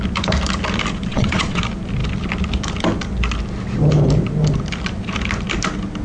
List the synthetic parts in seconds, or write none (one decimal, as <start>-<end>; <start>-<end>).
1.1-1.6